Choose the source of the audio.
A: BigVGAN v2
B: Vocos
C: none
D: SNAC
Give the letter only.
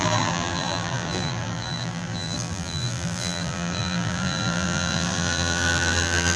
A